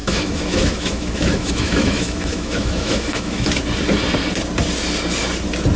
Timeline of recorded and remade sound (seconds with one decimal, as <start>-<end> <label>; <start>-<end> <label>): 0.0-3.5 remade; 3.5-5.8 recorded

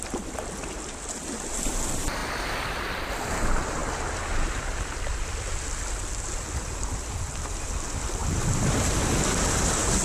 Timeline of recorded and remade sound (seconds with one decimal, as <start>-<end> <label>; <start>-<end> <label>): 0.0-10.0 recorded

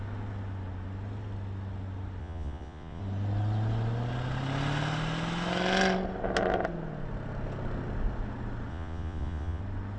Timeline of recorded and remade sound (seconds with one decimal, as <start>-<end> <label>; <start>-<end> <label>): 0.0-2.2 recorded; 2.2-3.0 remade; 3.0-8.7 recorded; 8.7-9.6 remade; 9.6-10.0 recorded

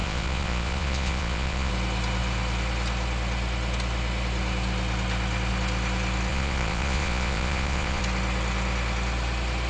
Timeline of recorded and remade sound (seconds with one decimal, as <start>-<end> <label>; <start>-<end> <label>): 0.0-1.7 remade; 1.7-6.3 recorded; 6.3-8.0 remade; 8.0-9.7 recorded

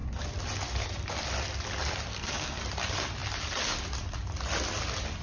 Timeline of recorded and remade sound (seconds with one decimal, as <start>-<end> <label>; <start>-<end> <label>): 0.0-2.1 recorded; 2.1-2.6 remade; 2.6-5.2 recorded

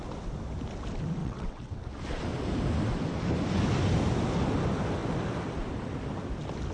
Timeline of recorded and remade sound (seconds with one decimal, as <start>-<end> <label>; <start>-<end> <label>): 0.0-1.2 recorded; 1.2-1.8 remade; 1.8-6.7 recorded

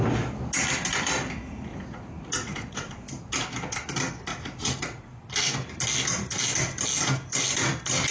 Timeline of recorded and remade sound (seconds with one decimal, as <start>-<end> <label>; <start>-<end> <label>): 0.0-1.7 recorded; 1.7-3.0 remade; 3.0-4.3 recorded; 4.3-5.2 remade; 5.2-8.1 recorded

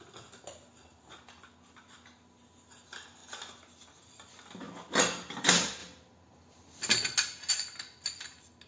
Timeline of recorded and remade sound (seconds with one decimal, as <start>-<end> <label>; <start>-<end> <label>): 0.0-8.7 recorded